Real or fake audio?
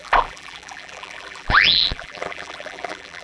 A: fake